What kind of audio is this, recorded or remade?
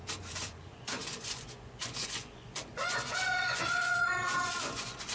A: remade